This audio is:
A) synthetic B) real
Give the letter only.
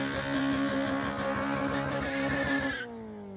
B